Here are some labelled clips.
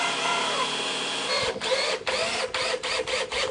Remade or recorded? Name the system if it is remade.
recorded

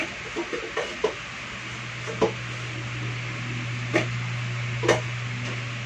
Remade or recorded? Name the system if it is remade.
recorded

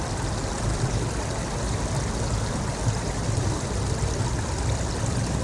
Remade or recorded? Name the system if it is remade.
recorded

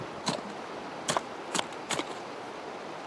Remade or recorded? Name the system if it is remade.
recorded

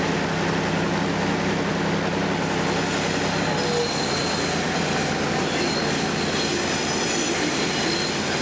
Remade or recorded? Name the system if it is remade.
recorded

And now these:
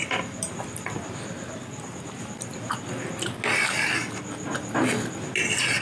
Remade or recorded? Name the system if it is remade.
recorded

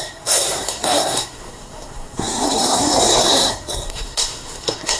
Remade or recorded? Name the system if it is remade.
remade, codec, SNAC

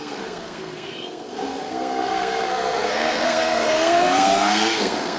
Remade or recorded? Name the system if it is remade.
remade, codec, SNAC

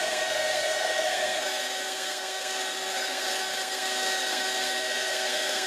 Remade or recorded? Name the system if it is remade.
remade, codec, SNAC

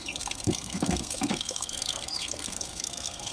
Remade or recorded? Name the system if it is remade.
remade, codec, SNAC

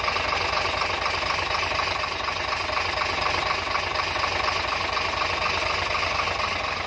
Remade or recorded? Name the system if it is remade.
recorded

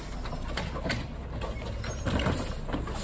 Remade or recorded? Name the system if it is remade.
recorded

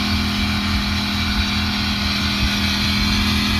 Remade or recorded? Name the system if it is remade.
recorded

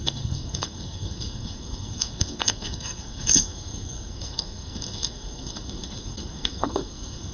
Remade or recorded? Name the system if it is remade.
remade, codec, SNAC